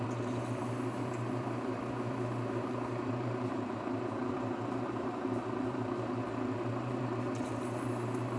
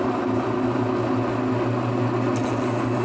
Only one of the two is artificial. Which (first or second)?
first